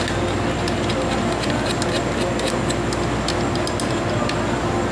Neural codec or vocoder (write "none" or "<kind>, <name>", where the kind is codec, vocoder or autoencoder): none